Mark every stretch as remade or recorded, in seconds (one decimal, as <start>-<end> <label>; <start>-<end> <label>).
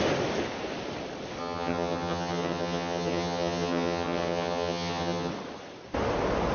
0.0-1.4 recorded; 1.4-5.3 remade; 5.3-6.5 recorded